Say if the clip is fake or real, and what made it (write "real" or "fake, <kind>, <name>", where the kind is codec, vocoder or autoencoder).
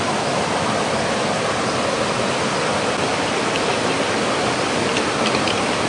real